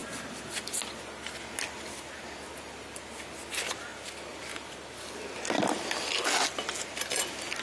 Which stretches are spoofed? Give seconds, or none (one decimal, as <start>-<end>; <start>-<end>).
none

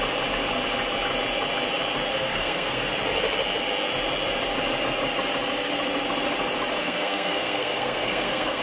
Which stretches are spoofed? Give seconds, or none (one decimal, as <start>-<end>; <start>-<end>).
2.1-2.9; 6.8-8.6

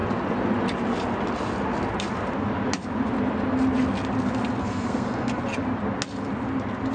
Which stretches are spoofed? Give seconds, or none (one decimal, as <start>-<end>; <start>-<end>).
4.6-5.4

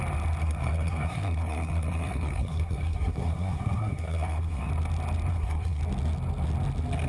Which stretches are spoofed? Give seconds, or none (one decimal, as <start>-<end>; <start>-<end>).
0.4-4.7; 5.3-5.8

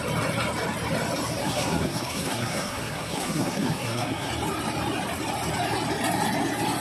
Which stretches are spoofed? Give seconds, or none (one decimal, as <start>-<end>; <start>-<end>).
1.4-4.3

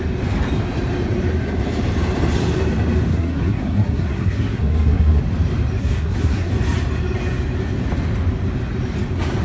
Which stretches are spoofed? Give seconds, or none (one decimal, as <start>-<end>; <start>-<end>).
3.1-5.2; 5.8-6.5

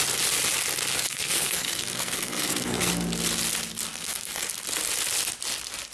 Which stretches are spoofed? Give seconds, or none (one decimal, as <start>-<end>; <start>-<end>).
0.9-2.9; 3.9-4.5

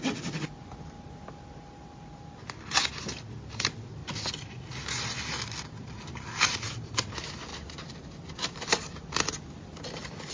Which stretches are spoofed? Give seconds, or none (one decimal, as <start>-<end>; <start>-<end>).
none